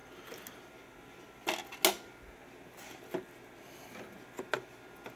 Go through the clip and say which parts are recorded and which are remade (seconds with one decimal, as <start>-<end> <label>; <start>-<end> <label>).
0.0-5.2 recorded